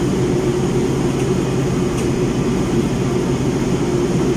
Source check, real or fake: real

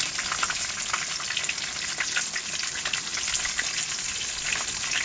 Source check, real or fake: real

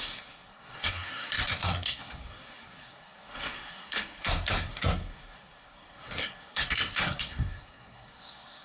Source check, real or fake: fake